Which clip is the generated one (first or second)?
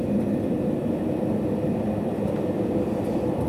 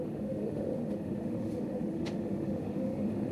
second